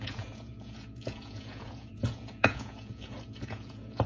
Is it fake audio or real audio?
fake